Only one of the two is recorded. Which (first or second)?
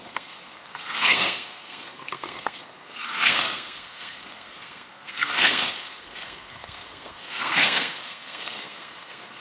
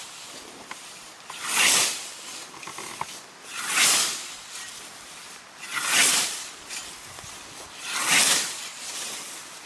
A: second